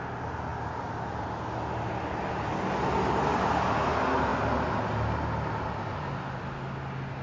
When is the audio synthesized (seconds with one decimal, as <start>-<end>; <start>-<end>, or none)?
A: none